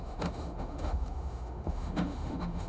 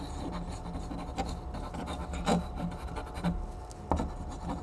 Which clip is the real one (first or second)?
second